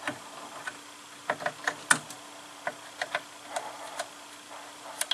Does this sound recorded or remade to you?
recorded